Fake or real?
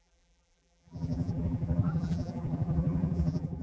fake